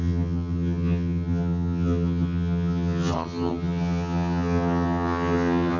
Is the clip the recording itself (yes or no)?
no